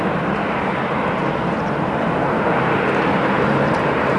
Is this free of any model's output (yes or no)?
no